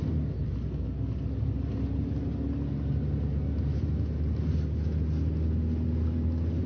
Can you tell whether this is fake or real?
real